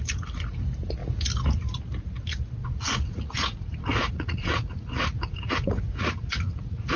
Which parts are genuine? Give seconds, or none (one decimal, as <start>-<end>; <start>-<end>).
0.0-2.6